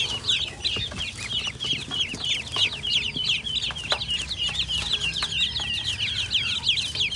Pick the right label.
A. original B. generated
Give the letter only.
A